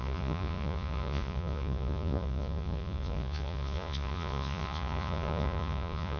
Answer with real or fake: fake